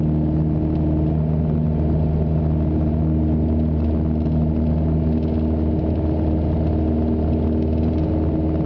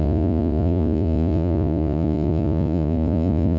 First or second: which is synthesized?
second